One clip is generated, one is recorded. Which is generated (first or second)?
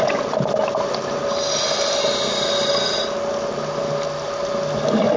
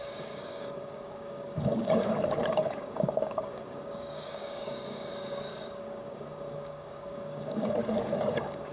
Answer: second